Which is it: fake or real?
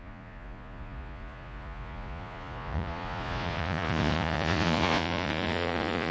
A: fake